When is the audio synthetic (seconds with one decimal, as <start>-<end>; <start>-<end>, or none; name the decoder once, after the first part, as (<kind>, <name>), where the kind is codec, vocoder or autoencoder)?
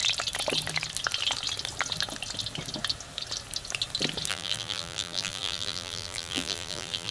4.3-7.1 (vocoder, BigVGAN v2)